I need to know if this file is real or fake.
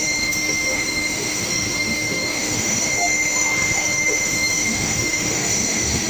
fake